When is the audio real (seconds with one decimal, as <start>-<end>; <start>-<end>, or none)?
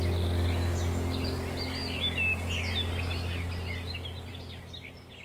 0.0-5.2